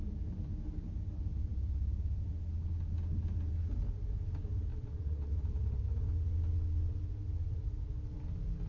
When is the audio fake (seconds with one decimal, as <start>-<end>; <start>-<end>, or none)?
4.7-5.3